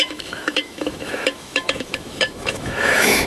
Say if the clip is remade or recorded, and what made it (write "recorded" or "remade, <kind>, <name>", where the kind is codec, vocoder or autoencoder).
remade, autoencoder, DAC-VAE